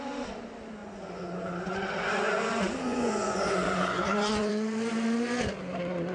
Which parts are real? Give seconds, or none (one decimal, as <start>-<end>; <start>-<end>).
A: 0.0-0.8; 4.5-6.1